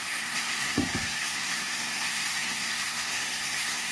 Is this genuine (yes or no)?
no